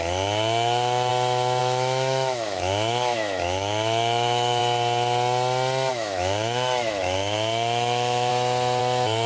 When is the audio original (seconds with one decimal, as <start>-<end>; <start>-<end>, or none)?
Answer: 1.1-1.6; 4.6-5.9; 8.3-8.8

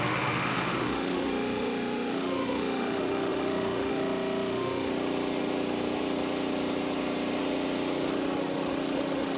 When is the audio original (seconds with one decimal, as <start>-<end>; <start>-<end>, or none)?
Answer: 4.9-8.1